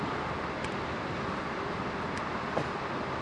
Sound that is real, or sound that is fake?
real